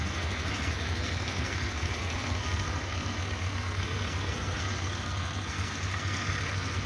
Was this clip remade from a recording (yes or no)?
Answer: yes